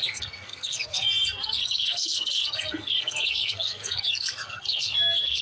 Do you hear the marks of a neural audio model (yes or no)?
yes